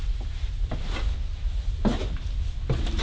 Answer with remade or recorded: recorded